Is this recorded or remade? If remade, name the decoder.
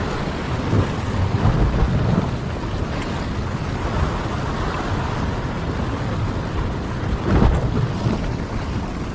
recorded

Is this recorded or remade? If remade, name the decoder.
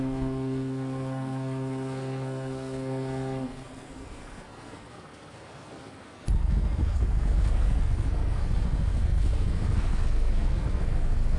remade, codec, SNAC